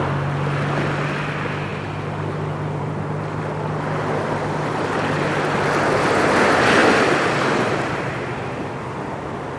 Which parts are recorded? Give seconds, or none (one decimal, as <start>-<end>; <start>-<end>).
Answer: 0.0-6.8; 8.7-9.6